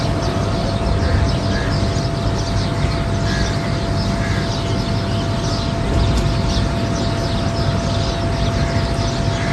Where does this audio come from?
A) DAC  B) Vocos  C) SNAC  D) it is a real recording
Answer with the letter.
D